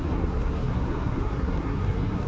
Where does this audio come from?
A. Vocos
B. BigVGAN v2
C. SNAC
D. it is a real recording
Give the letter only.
C